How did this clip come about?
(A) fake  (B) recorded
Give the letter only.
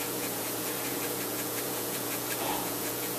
A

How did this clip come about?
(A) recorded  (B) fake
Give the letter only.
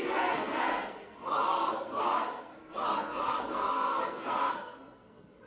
B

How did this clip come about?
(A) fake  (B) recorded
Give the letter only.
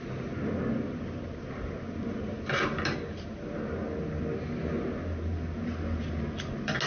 B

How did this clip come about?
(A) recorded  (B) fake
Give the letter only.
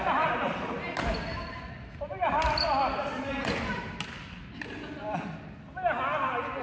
A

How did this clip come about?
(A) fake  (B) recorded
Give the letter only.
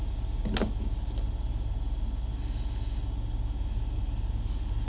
B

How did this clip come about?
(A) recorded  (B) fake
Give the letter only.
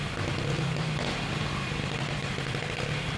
A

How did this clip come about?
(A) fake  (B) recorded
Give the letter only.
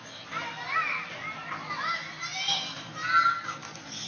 B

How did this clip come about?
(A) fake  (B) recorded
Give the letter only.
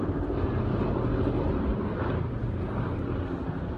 B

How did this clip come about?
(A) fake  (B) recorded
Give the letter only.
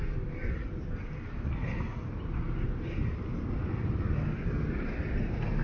B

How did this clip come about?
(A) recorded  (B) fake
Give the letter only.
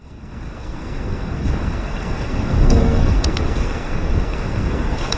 B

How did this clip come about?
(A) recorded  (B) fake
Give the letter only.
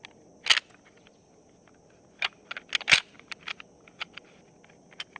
A